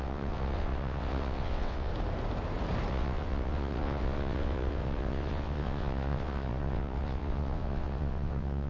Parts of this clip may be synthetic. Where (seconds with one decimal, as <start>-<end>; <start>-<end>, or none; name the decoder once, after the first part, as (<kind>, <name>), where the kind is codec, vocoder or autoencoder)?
0.0-1.9 (vocoder, WaveNeXt); 2.9-8.7